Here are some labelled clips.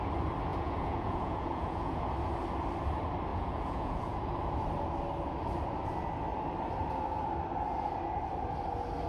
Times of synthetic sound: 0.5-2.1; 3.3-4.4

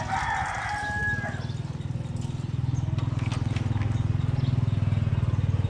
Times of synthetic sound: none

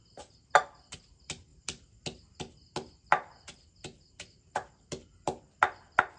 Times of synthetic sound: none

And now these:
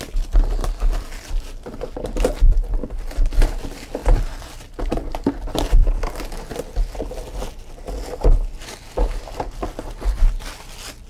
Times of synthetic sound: none

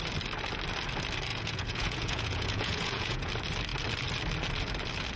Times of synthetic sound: 1.3-3.3